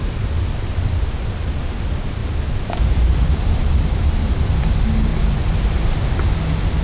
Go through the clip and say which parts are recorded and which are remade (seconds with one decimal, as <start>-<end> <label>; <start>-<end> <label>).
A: 0.0-2.2 remade; 2.2-2.8 recorded; 2.8-5.1 remade; 5.1-5.6 recorded; 5.6-6.8 remade